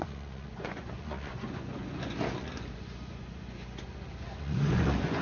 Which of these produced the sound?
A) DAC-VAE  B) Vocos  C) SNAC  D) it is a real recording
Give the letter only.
B